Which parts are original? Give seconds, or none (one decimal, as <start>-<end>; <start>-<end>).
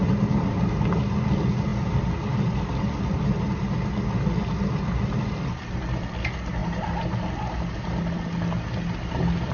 0.0-9.5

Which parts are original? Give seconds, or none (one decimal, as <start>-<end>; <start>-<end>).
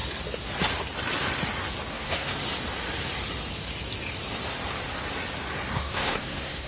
0.0-1.9; 2.3-5.7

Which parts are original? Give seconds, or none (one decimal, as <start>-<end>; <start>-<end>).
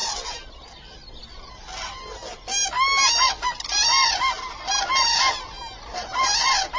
0.0-6.8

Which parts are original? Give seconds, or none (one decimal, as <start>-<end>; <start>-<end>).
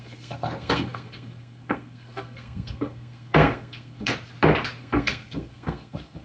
4.1-4.8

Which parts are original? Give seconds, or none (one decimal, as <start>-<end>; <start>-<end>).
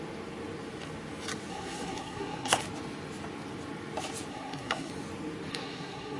0.0-1.5; 2.6-4.3; 4.9-5.5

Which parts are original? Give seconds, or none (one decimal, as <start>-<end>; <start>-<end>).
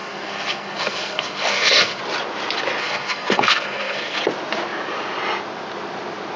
2.0-2.8; 4.2-6.4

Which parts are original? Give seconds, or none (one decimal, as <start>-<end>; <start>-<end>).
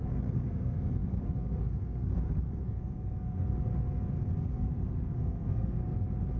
3.5-4.4; 5.8-6.4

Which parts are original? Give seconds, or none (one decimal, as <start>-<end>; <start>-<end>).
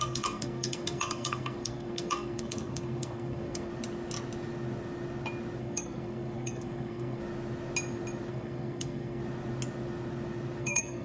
3.7-5.6; 7.2-8.3; 9.2-10.6